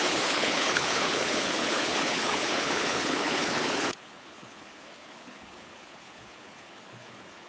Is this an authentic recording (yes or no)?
no